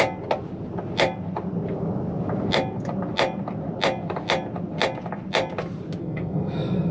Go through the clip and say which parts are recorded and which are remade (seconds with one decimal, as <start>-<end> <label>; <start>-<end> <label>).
0.0-6.0 recorded; 6.0-6.9 remade